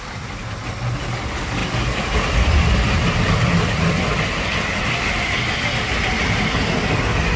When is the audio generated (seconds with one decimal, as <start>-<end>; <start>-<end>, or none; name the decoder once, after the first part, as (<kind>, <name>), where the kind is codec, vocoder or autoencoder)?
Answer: none